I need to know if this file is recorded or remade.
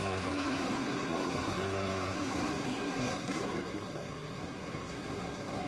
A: remade